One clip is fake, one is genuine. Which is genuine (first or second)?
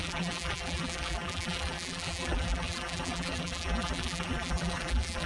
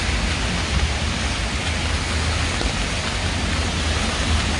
second